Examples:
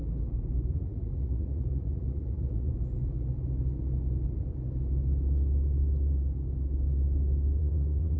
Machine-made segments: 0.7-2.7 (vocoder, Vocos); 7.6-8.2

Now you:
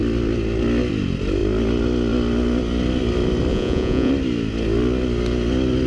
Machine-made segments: 3.5-4.1 (vocoder, Vocos)

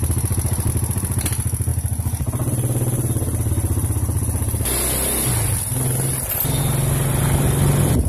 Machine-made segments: none

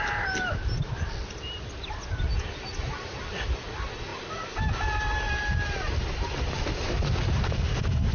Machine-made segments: none

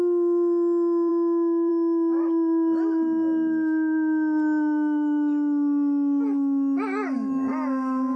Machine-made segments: none

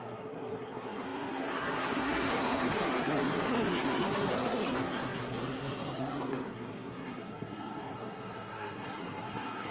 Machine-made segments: 0.0-9.7 (codec, SNAC)